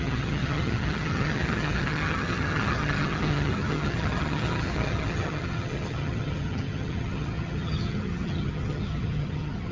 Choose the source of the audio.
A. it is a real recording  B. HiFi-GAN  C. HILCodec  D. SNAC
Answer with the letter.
B